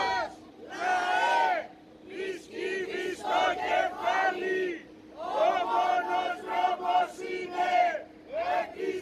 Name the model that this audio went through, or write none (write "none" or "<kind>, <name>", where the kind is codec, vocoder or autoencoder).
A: none